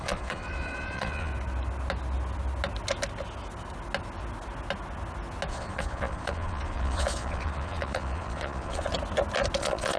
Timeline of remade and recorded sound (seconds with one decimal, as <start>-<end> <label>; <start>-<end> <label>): 0.0-1.3 remade; 1.3-5.5 recorded; 5.5-8.9 remade; 8.9-9.6 recorded; 9.6-10.0 remade